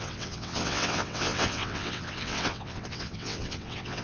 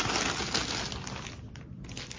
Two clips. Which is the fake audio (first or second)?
first